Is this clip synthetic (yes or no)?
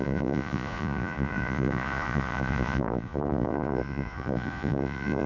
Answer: yes